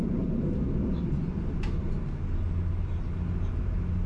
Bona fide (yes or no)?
yes